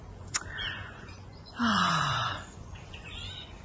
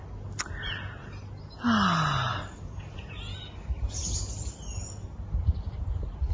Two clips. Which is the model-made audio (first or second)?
first